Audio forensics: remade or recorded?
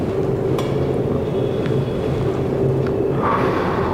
recorded